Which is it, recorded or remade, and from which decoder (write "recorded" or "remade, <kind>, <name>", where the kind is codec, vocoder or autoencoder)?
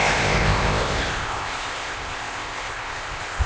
remade, codec, ZipCodec